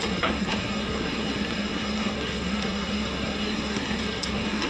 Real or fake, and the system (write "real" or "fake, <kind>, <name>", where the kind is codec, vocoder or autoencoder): fake, codec, SNAC